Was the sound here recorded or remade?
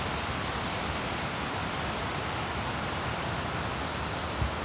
recorded